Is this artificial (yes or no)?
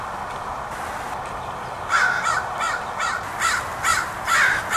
no